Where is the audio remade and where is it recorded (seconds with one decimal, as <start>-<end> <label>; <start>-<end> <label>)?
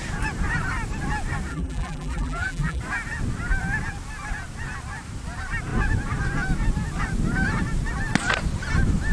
0.0-1.5 recorded; 1.5-2.8 remade; 2.8-9.1 recorded